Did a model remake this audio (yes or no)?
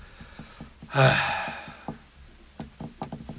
no